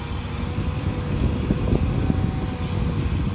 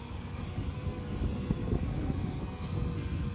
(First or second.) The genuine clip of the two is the first